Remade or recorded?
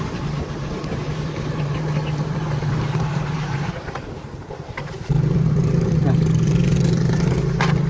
remade